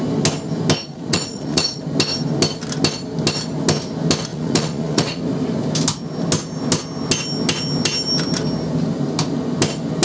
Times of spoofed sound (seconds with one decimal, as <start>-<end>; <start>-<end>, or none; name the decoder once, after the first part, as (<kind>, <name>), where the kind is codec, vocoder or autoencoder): 0.8-1.8 (vocoder, Vocos); 4.3-5.2